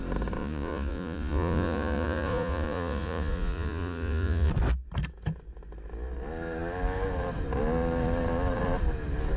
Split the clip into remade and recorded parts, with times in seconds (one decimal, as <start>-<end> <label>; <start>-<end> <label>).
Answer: 0.0-0.4 recorded; 0.4-4.5 remade; 4.5-9.4 recorded